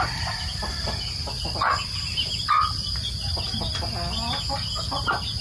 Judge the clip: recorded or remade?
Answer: recorded